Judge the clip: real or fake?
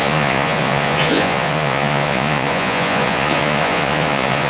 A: fake